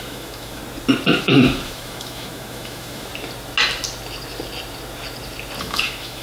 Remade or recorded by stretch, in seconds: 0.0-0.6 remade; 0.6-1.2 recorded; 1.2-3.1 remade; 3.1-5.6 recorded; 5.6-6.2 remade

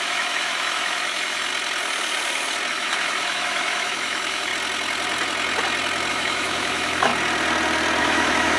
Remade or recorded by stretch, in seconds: 0.0-1.5 remade; 1.5-2.7 recorded; 2.7-4.5 remade; 4.5-6.1 recorded; 6.1-7.1 remade; 7.1-8.0 recorded; 8.0-8.6 remade

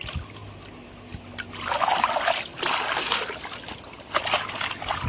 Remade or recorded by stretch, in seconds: 0.0-5.1 recorded

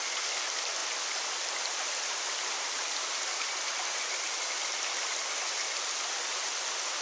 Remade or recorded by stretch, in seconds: 0.0-7.0 recorded

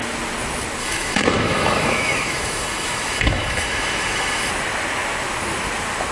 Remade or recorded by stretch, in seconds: 0.0-0.8 recorded; 0.8-4.5 remade; 4.5-6.1 recorded

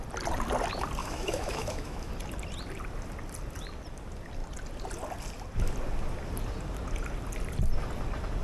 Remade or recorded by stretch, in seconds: 0.0-1.0 recorded; 1.0-2.1 remade; 2.1-8.4 recorded

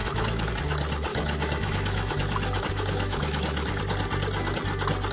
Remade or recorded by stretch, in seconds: 0.0-0.5 remade; 0.5-1.1 recorded; 1.1-3.8 remade; 3.8-5.1 recorded